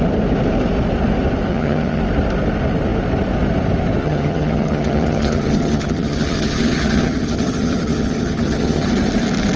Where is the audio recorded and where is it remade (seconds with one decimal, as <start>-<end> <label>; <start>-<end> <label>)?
0.0-1.5 recorded; 1.5-2.0 remade; 2.0-4.0 recorded; 4.0-8.9 remade; 8.9-9.6 recorded